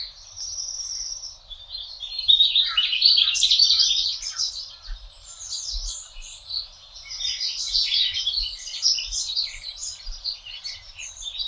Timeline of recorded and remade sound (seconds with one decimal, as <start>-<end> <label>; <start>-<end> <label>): 0.0-11.5 remade